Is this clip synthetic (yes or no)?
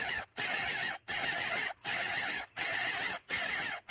yes